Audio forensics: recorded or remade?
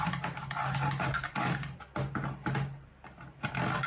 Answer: recorded